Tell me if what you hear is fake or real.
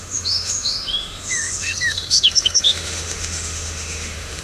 fake